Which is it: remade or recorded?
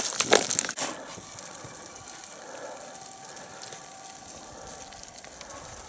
recorded